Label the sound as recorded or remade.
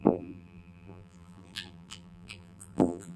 remade